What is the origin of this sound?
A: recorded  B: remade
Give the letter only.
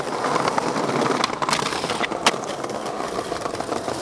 A